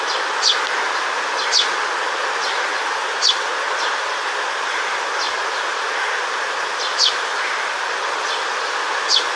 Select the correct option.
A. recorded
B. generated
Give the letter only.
A